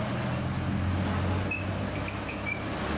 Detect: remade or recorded recorded